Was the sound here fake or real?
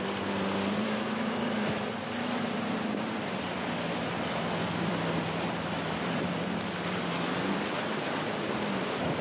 fake